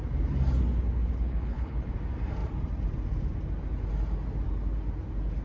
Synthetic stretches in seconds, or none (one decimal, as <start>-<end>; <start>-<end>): 1.0-1.9

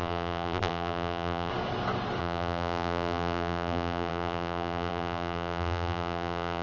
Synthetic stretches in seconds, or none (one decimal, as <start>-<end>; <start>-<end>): 0.0-1.5; 2.2-6.6

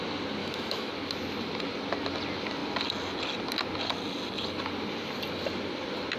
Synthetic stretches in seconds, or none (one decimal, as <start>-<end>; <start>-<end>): 0.4-0.9

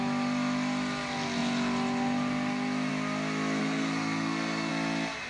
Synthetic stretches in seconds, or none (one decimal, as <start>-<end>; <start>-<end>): 3.6-4.7

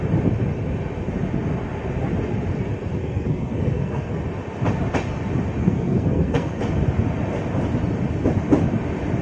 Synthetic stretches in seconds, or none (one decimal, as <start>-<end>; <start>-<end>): 3.0-4.2; 5.6-6.6

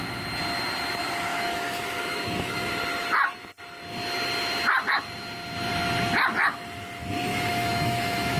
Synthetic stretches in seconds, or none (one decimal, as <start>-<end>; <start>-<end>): 1.3-2.7; 7.3-8.4